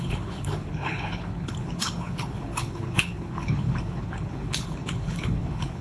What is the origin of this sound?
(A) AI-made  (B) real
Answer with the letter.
A